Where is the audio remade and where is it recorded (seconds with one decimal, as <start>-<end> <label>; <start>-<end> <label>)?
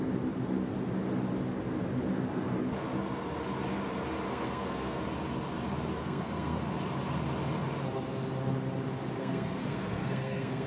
0.0-4.3 recorded; 4.3-5.0 remade; 5.0-6.0 recorded; 6.0-6.7 remade; 6.7-9.2 recorded; 9.2-10.7 remade